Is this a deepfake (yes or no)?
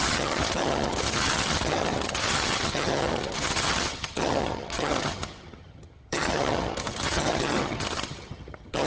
yes